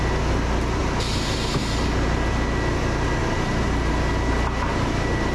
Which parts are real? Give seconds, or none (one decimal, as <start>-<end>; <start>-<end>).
0.0-0.8; 1.8-3.2; 3.9-5.3